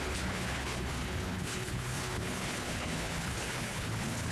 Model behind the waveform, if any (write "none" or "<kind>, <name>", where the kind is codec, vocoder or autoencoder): codec, HILCodec